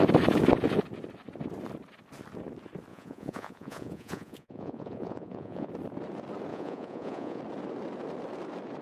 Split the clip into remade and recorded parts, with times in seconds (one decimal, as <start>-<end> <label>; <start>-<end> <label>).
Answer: 0.0-2.9 recorded; 2.9-5.7 remade; 5.7-6.5 recorded; 6.5-7.4 remade; 7.4-8.8 recorded